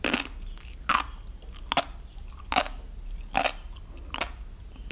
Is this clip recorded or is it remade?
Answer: recorded